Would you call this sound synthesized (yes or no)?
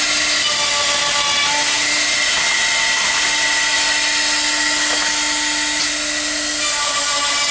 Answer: no